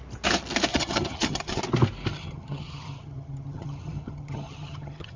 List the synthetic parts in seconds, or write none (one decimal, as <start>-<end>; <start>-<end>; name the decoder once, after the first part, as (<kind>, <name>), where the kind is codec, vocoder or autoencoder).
0.7-1.6 (vocoder, HiFi-GAN); 2.1-5.2